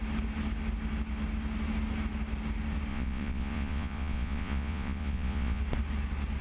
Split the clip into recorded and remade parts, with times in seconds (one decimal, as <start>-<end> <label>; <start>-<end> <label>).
0.0-2.9 recorded; 2.9-5.6 remade; 5.6-6.4 recorded